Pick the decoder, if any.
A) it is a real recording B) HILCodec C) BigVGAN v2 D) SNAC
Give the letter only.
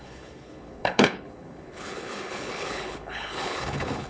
B